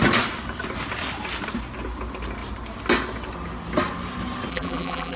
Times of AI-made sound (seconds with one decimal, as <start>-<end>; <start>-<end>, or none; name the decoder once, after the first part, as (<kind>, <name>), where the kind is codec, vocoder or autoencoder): 4.5-5.2 (vocoder, BigVGAN v2)